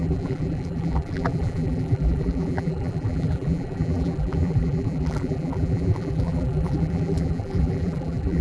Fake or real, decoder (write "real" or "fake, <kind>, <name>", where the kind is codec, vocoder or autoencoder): fake, vocoder, BigVGAN v2